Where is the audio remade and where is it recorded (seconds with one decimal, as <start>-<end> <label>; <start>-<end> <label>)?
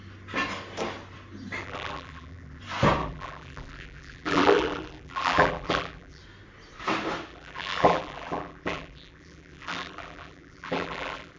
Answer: 0.0-1.6 recorded; 1.6-2.6 remade; 2.6-3.0 recorded; 3.0-6.2 remade; 6.2-7.3 recorded; 7.3-11.4 remade